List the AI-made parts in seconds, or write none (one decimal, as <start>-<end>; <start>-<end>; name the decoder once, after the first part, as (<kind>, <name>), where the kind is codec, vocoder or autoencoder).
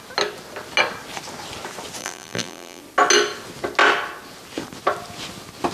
2.0-2.8 (vocoder, BigVGAN v2)